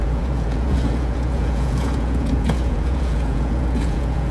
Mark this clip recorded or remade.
remade